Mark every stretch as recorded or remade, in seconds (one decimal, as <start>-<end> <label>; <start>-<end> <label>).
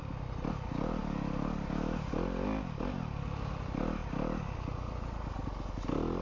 0.0-6.2 recorded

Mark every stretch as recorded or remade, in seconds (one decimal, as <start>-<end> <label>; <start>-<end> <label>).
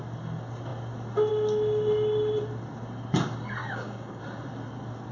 0.0-3.6 recorded; 3.6-4.2 remade; 4.2-5.1 recorded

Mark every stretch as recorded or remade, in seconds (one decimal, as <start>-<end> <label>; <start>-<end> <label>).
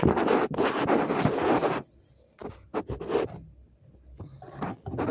0.0-5.1 recorded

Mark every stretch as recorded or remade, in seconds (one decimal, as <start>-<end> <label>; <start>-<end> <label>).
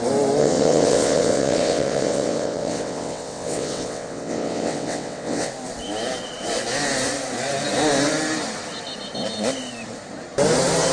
0.0-0.4 recorded; 0.4-5.5 remade; 5.5-10.9 recorded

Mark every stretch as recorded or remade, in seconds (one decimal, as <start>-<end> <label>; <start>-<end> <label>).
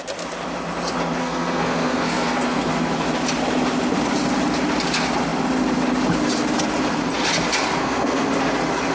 0.0-1.2 recorded; 1.2-2.7 remade; 2.7-7.8 recorded; 7.8-8.3 remade; 8.3-8.9 recorded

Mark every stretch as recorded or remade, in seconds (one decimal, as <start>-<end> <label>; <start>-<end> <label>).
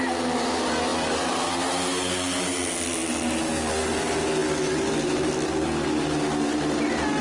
0.0-7.2 recorded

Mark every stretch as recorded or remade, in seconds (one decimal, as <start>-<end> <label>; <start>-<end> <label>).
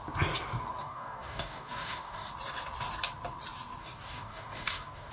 0.0-0.8 recorded; 0.8-2.3 remade; 2.3-3.8 recorded; 3.8-5.1 remade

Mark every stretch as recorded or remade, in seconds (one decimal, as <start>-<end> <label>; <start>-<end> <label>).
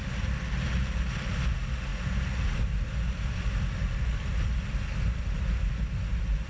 0.0-6.5 recorded